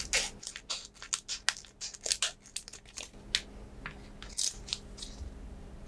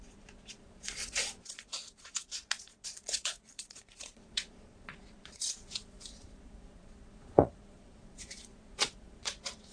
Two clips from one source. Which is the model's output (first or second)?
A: second